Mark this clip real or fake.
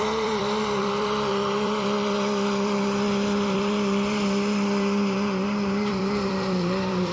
fake